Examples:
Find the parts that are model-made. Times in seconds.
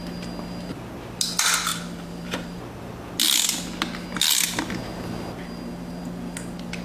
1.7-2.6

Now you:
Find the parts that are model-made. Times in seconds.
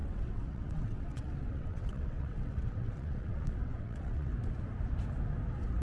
0.0-4.3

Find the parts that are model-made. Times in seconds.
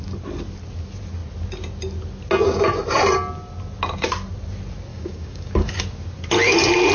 4.9-5.8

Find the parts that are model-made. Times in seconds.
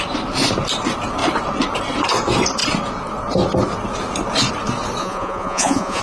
5.0-6.0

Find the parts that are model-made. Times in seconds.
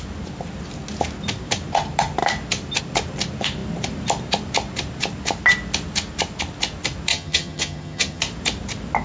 7.1-8.2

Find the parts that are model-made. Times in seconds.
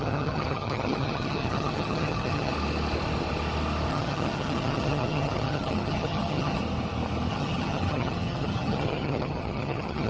0.0-2.5; 3.9-6.6; 7.3-10.1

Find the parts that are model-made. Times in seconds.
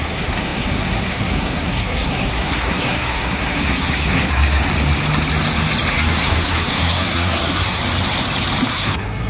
0.0-4.6; 5.9-7.8; 8.7-9.3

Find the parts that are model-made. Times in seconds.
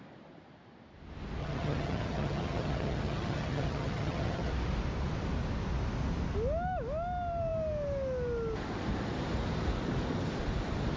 1.4-4.5